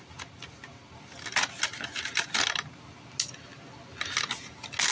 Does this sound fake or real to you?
real